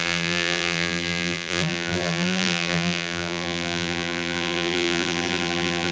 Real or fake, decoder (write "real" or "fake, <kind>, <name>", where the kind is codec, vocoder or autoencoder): fake, vocoder, BigVGAN v2